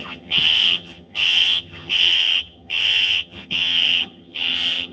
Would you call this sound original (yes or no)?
no